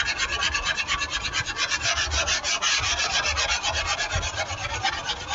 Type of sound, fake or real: fake